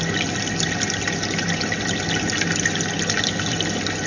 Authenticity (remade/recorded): recorded